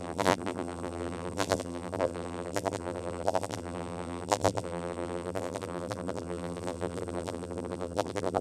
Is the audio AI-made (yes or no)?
yes